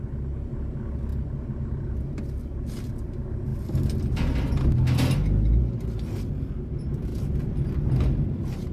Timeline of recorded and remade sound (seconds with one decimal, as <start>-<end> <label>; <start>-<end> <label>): 0.0-8.7 recorded